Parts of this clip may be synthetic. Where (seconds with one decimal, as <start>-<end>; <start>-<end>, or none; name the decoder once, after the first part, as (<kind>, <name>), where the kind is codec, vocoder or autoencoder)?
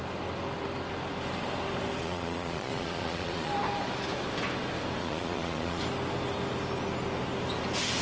2.0-3.5 (vocoder, Vocos); 5.0-5.8